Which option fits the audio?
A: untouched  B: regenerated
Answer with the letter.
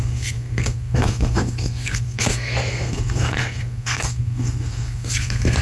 B